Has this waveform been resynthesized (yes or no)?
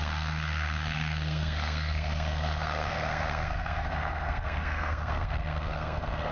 yes